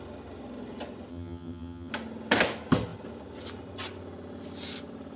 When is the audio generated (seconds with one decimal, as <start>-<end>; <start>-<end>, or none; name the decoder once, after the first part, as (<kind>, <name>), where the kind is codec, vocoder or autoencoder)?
1.1-1.9 (vocoder, HiFi-GAN)

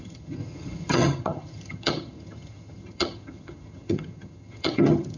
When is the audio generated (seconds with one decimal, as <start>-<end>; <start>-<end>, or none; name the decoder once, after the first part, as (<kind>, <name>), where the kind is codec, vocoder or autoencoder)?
0.0-5.2 (vocoder, HiFi-GAN)

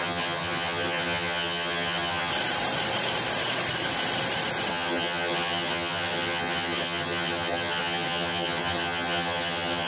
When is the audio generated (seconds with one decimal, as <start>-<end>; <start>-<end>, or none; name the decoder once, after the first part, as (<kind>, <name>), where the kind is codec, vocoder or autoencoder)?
0.0-2.3 (vocoder, HiFi-GAN); 4.7-9.9

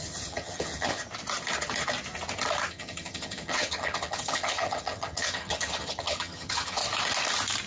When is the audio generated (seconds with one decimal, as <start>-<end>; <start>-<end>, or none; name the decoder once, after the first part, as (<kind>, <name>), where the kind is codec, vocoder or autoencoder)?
0.0-1.0 (vocoder, HiFi-GAN); 2.7-6.8

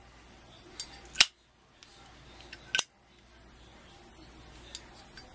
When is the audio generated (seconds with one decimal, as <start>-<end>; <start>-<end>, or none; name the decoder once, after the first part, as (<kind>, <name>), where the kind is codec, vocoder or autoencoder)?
none

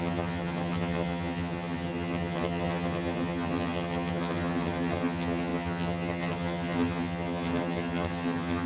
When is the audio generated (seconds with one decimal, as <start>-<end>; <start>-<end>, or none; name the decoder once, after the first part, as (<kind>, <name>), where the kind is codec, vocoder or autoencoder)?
0.0-8.7 (vocoder, HiFi-GAN)

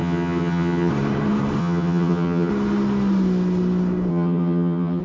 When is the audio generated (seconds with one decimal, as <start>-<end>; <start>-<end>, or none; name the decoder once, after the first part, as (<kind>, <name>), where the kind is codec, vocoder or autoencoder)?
0.0-0.9 (vocoder, HiFi-GAN); 1.6-2.5; 4.1-5.0